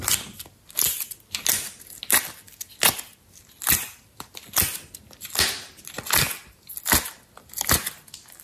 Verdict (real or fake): real